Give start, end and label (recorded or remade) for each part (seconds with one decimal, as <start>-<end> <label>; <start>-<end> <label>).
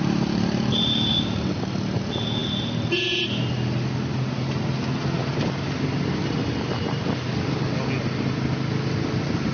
0.0-9.5 recorded